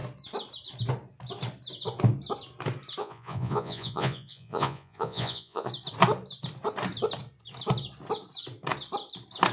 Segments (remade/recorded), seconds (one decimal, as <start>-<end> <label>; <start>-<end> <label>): 0.0-3.0 recorded; 3.0-5.7 remade; 5.7-9.5 recorded